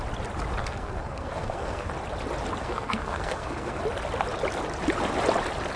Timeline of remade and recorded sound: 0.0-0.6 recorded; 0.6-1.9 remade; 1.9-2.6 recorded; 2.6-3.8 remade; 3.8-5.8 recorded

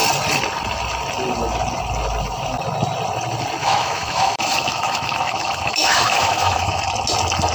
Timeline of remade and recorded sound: 0.0-3.6 recorded; 3.6-6.8 remade; 6.8-7.5 recorded

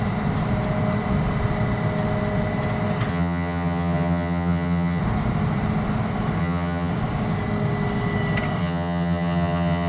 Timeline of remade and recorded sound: 0.0-3.1 recorded; 3.1-5.0 remade; 5.0-6.4 recorded; 6.4-6.9 remade; 6.9-8.6 recorded; 8.6-9.9 remade

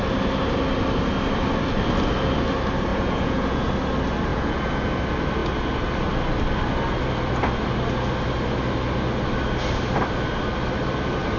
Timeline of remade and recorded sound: 0.0-2.9 recorded; 2.9-3.7 remade; 3.7-4.3 recorded; 4.3-4.9 remade; 4.9-11.4 recorded

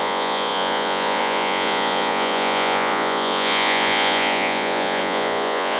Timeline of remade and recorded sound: 0.0-5.8 remade